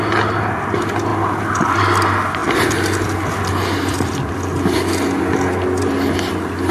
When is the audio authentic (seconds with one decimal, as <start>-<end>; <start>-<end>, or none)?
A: 0.0-6.7